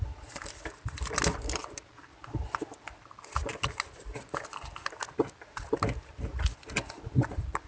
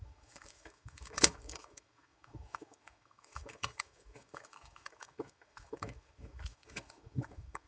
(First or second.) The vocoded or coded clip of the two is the second